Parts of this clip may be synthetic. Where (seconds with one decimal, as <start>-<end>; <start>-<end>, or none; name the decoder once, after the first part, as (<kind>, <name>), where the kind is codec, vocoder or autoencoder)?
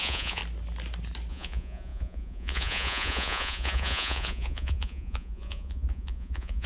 0.0-0.4 (vocoder, Vocos); 1.3-6.7